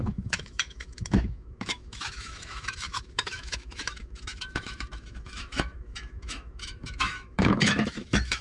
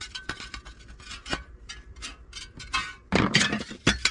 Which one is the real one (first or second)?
second